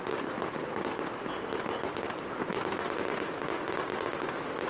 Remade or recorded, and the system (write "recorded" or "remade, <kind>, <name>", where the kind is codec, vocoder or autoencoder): recorded